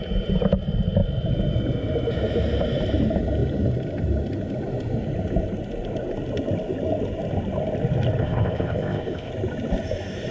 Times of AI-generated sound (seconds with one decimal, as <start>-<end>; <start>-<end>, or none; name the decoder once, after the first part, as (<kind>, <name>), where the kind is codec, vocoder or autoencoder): 8.2-9.3 (codec, ZipCodec)